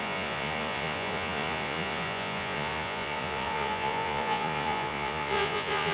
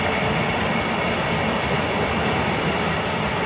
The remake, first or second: first